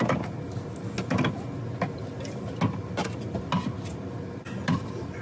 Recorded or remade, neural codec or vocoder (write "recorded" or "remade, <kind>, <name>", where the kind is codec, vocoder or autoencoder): recorded